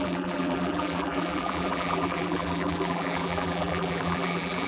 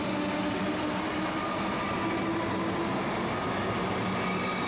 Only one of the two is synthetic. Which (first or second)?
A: first